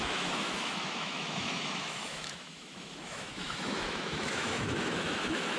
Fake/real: fake